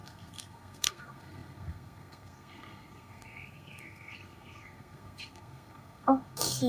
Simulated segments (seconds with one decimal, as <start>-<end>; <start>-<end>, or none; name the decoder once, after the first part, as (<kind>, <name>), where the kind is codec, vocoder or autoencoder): 0.0-6.7 (codec, SNAC)